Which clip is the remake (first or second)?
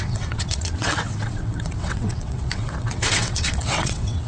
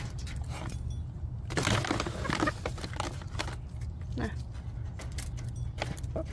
first